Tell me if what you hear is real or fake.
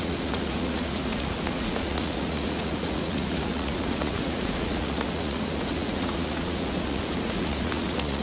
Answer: fake